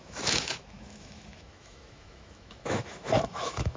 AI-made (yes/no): yes